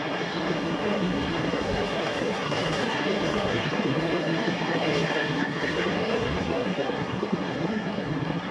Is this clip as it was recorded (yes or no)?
no